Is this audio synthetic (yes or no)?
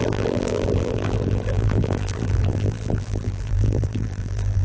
yes